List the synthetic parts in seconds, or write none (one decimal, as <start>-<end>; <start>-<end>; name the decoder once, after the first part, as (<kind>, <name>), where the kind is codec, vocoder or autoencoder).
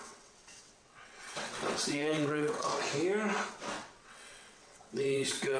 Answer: 0.0-2.7 (vocoder, WaveNeXt); 3.5-5.6